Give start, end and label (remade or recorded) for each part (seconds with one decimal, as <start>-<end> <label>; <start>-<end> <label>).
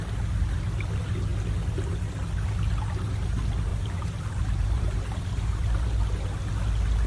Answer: 0.0-3.7 recorded; 3.7-6.0 remade; 6.0-7.1 recorded